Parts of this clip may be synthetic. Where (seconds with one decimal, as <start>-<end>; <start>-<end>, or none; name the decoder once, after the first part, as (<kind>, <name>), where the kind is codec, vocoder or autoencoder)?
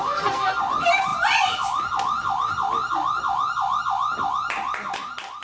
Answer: 0.0-0.6 (codec, SNAC)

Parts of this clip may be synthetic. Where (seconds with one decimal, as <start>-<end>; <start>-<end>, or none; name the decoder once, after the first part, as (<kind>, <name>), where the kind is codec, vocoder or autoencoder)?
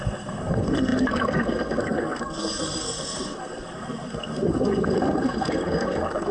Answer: 0.0-6.3 (codec, SNAC)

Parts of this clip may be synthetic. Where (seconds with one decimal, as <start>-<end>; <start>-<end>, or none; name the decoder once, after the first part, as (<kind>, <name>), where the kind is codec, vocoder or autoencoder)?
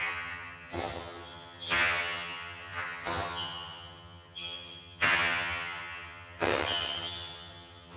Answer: 0.0-8.0 (vocoder, HiFi-GAN)